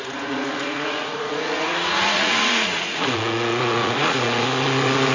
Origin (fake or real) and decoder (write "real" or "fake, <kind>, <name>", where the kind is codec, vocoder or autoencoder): fake, vocoder, Vocos